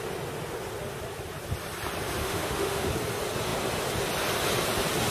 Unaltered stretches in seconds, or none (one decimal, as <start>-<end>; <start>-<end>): 0.0-2.2; 2.9-5.1